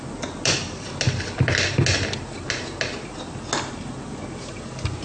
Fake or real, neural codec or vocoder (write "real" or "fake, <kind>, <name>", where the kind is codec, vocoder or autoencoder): real